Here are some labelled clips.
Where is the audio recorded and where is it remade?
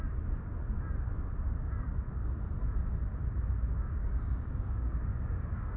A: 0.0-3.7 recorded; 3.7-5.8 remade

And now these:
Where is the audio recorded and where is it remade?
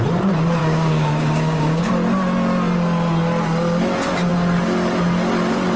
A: 0.0-0.6 recorded; 0.6-1.9 remade; 1.9-5.8 recorded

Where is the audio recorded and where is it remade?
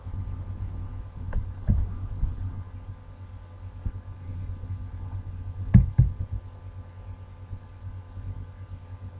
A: 0.0-0.9 recorded; 0.9-6.0 remade; 6.0-7.6 recorded; 7.6-9.2 remade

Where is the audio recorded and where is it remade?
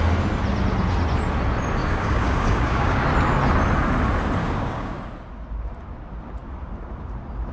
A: 0.0-1.8 recorded; 1.8-3.0 remade; 3.0-4.4 recorded; 4.4-5.0 remade; 5.0-7.5 recorded